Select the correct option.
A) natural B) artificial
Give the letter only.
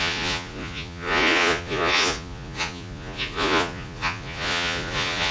B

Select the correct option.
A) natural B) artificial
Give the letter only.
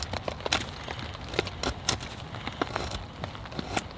A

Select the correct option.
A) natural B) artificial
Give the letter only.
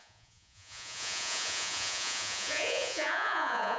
B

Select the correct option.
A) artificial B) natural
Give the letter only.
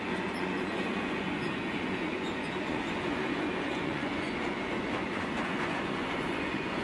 A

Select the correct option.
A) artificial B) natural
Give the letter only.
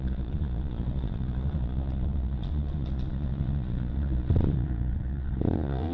A